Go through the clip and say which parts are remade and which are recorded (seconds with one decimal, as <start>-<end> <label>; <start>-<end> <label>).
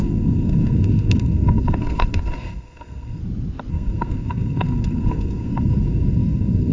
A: 0.0-3.2 remade; 3.2-3.7 recorded; 3.7-6.7 remade